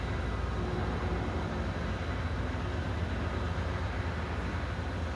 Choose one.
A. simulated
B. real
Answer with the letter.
B